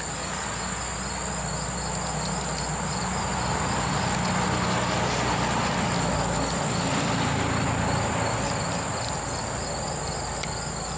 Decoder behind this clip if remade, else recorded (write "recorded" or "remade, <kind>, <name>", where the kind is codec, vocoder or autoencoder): recorded